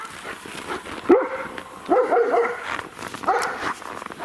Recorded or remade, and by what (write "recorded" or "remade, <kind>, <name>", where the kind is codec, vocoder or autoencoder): recorded